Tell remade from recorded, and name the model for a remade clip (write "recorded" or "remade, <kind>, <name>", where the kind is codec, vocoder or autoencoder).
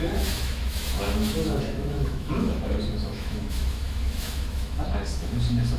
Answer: remade, autoencoder, DAC-VAE